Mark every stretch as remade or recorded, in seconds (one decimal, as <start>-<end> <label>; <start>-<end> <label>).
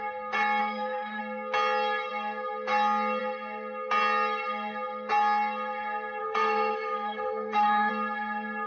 0.0-0.6 recorded; 0.6-1.2 remade; 1.2-6.2 recorded; 6.2-7.9 remade; 7.9-8.7 recorded